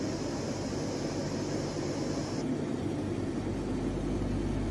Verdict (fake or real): real